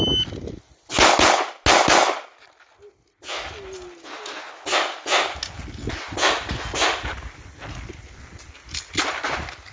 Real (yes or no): yes